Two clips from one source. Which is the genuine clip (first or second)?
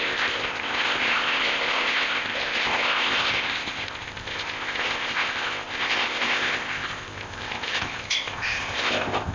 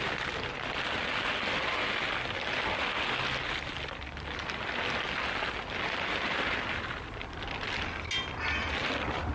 second